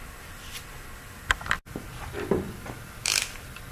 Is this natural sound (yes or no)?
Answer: no